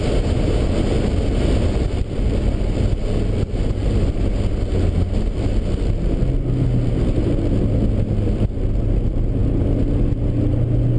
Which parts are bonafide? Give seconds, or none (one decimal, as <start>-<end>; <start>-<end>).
0.0-11.0